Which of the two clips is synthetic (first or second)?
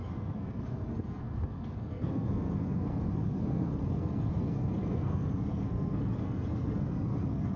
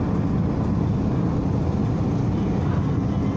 first